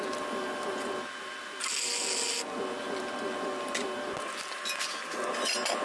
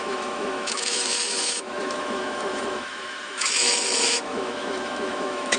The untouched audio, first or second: first